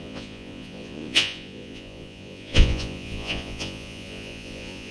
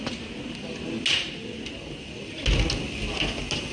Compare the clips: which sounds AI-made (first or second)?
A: first